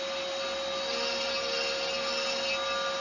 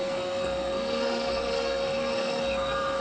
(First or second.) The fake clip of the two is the second